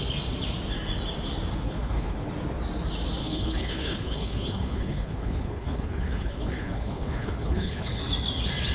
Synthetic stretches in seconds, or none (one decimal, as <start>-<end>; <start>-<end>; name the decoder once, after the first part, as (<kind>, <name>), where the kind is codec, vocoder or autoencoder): 1.5-2.3 (codec, HILCodec); 3.2-8.0